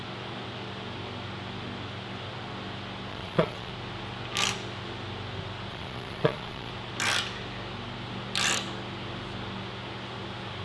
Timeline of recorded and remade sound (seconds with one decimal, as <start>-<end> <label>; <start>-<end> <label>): 0.0-3.1 recorded; 3.1-3.7 remade; 3.7-5.7 recorded; 5.7-6.7 remade; 6.7-10.6 recorded